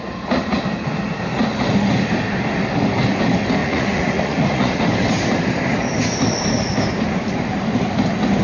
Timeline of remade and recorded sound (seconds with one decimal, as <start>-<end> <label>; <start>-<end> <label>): 0.0-3.6 recorded; 3.6-4.8 remade; 4.8-8.4 recorded

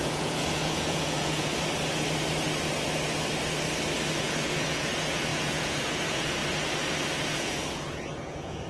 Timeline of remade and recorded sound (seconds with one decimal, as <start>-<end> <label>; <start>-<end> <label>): 0.0-1.5 remade; 1.5-4.2 recorded; 4.2-6.4 remade; 6.4-7.1 recorded; 7.1-8.7 remade